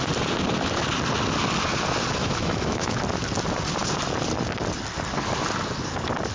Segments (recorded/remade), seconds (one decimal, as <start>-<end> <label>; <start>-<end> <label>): 0.0-2.2 recorded; 2.2-3.0 remade; 3.0-6.3 recorded